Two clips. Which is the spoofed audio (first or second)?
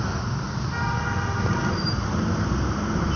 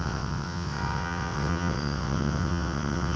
second